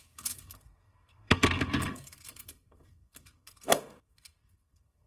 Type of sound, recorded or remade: remade